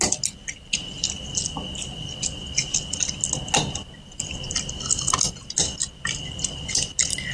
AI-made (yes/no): no